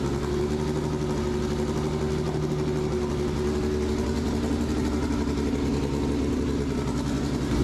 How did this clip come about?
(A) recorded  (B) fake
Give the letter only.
A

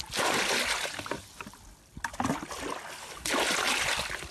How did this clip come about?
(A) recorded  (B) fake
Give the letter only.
A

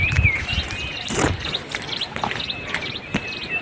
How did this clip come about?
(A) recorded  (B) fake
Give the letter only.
A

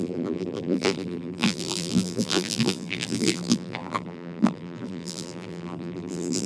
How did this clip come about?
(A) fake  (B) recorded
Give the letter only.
A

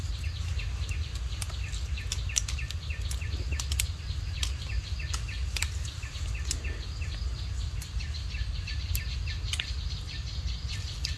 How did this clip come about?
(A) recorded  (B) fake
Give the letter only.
A